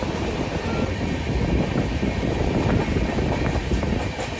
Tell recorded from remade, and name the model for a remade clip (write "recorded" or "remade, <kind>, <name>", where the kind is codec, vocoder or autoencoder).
recorded